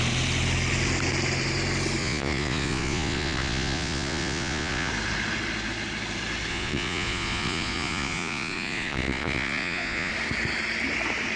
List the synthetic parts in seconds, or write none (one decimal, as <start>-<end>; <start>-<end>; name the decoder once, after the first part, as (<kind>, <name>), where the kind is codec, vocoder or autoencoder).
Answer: 2.0-4.9 (vocoder, Vocos); 6.5-10.1